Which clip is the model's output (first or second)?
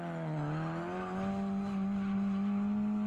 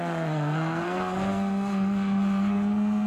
second